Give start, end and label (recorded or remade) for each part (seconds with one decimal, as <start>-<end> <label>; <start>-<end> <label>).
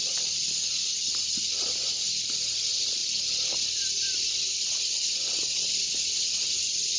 0.0-7.0 recorded